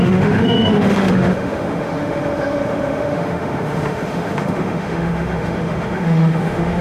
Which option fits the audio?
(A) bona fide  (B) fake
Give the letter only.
B